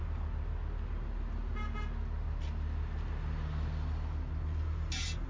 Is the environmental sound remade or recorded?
recorded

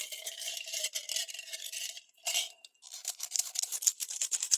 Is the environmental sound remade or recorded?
remade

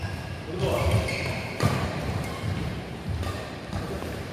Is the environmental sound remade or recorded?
recorded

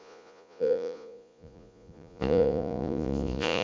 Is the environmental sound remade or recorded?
remade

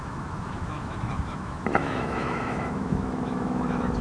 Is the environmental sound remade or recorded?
remade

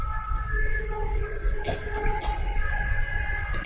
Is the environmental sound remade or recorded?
remade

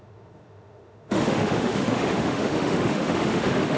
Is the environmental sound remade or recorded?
remade